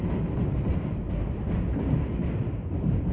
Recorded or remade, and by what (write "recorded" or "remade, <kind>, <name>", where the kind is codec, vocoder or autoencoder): remade, vocoder, BigVGAN v2